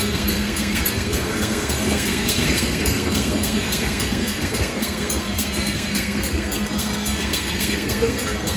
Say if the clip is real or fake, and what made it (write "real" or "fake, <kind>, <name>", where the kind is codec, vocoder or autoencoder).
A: fake, codec, SNAC